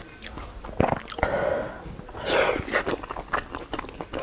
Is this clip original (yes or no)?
yes